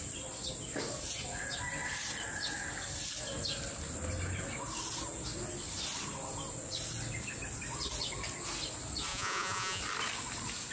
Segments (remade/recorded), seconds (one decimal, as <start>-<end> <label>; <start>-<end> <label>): 0.0-9.1 recorded; 9.1-9.8 remade; 9.8-10.7 recorded